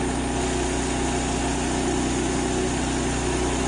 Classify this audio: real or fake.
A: real